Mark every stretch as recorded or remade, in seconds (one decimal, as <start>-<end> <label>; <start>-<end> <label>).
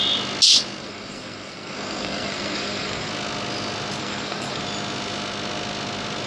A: 0.0-0.8 recorded; 0.8-3.1 remade; 3.1-4.0 recorded; 4.0-4.6 remade; 4.6-6.3 recorded